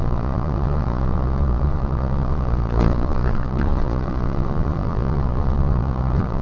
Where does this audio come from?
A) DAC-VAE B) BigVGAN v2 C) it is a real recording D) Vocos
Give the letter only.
D